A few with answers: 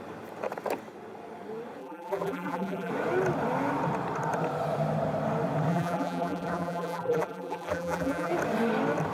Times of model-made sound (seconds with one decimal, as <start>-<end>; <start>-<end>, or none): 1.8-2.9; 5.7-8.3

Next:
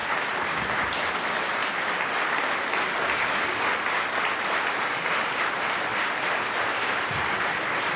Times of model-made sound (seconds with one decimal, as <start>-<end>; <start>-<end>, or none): 0.0-1.6; 5.1-5.9; 6.6-8.0

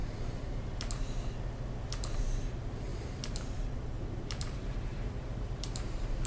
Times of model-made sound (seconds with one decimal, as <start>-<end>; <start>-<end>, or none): 0.0-0.9; 2.9-6.3